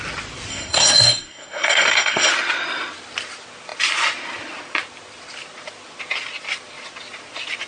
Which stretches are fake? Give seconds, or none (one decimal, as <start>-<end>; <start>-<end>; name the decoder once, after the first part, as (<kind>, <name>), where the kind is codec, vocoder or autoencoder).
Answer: 0.5-2.3 (codec, SNAC)